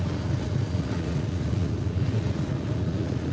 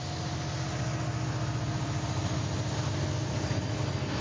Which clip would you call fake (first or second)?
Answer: first